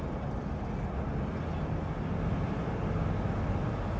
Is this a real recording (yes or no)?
yes